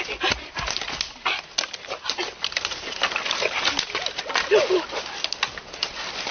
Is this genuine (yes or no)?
yes